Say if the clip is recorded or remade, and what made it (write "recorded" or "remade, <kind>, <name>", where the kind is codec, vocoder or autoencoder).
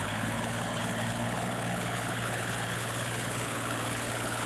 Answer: remade, codec, HILCodec